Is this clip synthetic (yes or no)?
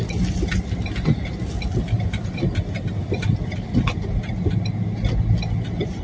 no